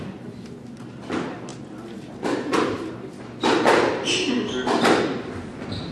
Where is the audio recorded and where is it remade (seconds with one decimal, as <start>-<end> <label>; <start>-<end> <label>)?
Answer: 0.0-5.9 recorded